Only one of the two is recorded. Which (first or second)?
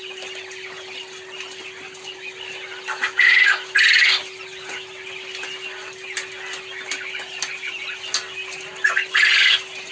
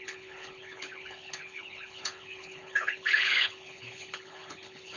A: first